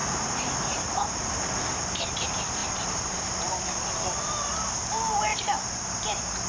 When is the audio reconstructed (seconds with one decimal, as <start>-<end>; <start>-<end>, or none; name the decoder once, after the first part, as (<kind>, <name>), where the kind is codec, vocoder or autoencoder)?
0.0-1.0 (vocoder, BigVGAN v2); 2.6-3.6; 5.3-6.5